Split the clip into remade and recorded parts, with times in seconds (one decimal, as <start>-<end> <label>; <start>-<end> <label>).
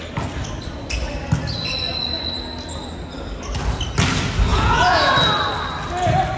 0.0-4.5 recorded; 4.5-5.1 remade; 5.1-6.4 recorded